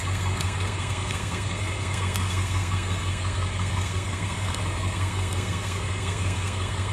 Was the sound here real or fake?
fake